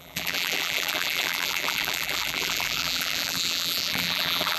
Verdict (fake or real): fake